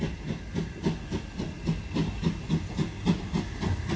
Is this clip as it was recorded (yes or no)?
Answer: yes